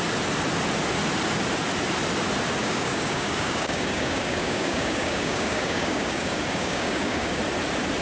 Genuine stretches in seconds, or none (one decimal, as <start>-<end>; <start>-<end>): 0.0-2.6; 7.4-8.0

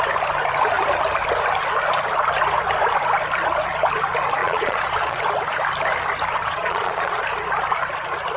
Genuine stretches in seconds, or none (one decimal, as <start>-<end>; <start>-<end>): 0.0-4.4; 5.2-6.4; 7.2-8.4

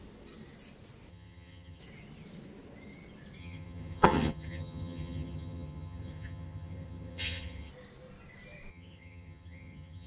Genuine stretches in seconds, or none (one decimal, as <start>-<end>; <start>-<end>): 0.0-1.1; 1.8-3.4; 7.7-8.7

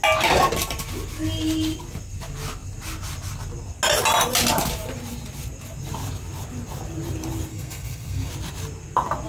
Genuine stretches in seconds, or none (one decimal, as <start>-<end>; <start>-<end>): 0.0-7.5; 8.3-9.3

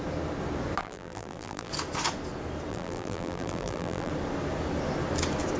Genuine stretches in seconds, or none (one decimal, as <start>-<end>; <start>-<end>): 0.0-0.8; 1.7-2.7; 4.1-5.6